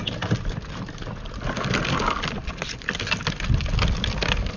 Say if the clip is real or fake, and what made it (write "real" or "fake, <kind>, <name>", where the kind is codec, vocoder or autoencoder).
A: real